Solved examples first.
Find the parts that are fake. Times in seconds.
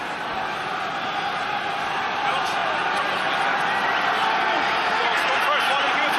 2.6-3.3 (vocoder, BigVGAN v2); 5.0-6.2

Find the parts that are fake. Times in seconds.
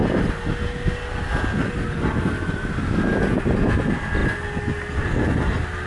none